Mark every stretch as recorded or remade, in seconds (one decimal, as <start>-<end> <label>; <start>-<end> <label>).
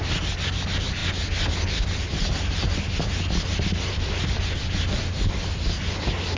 0.0-6.4 recorded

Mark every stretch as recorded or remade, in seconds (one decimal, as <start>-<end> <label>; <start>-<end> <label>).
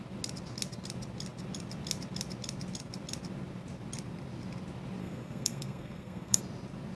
0.0-5.0 recorded; 5.0-6.4 remade; 6.4-6.9 recorded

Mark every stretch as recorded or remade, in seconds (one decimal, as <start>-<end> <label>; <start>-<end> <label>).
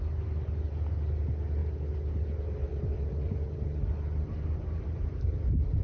0.0-5.8 recorded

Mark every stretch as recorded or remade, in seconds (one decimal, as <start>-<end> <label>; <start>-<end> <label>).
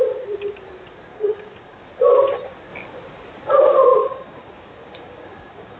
0.0-1.1 recorded; 1.1-1.9 remade; 1.9-4.0 recorded; 4.0-5.8 remade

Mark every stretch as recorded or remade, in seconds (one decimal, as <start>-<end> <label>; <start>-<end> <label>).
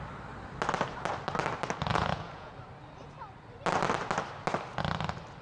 0.0-1.9 recorded; 1.9-2.5 remade; 2.5-5.4 recorded